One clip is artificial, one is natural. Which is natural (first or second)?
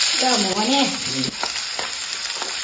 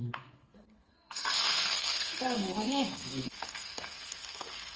first